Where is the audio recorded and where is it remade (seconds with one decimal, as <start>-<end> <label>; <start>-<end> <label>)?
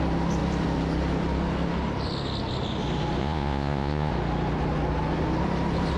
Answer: 0.0-3.2 recorded; 3.2-4.1 remade; 4.1-6.0 recorded